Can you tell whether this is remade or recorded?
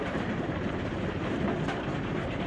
remade